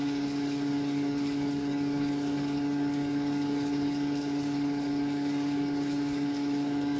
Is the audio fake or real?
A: fake